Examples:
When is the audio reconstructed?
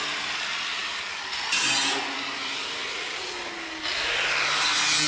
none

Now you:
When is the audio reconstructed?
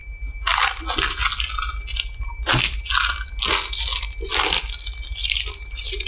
5.2-6.1 (vocoder, BigVGAN v2)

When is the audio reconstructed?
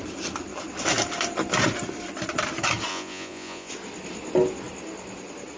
2.9-3.7 (vocoder, Vocos)